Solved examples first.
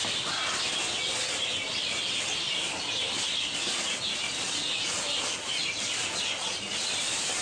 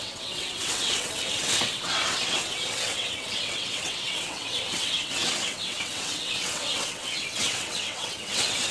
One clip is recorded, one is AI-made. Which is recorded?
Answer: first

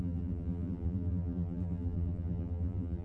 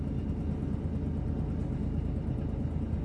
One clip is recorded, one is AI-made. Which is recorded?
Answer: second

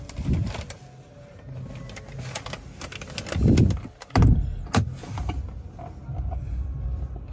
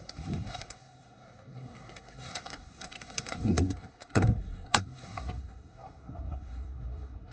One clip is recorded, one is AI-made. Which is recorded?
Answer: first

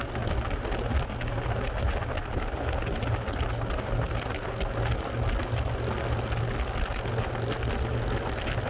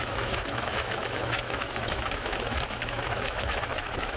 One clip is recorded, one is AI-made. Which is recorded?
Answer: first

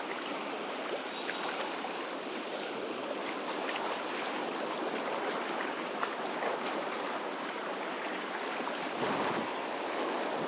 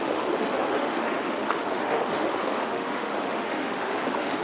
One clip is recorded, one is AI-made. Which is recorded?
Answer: first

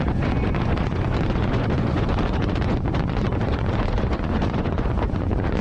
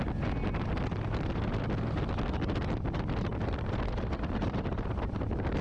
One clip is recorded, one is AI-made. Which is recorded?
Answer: second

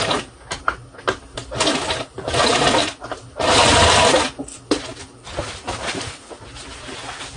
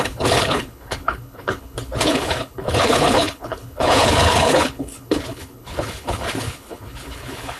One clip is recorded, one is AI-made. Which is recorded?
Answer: first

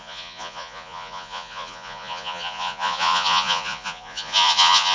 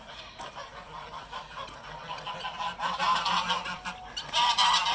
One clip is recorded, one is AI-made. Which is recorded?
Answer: second